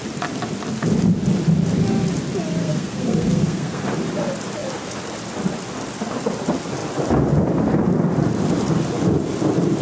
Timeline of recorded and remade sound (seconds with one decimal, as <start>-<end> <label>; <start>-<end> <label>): 0.0-2.6 recorded; 2.6-3.8 remade; 3.8-9.8 recorded